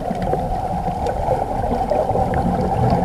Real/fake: real